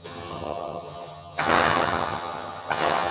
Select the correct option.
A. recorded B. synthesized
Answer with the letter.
B